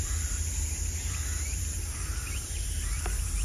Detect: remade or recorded remade